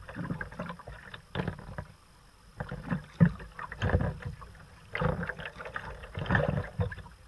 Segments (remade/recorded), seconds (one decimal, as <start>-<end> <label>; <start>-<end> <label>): 0.0-7.3 recorded